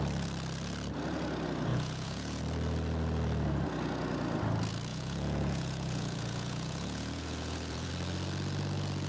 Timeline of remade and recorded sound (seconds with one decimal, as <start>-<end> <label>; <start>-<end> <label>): 0.0-1.7 recorded; 1.7-2.4 remade; 2.4-4.9 recorded; 4.9-7.9 remade; 7.9-9.1 recorded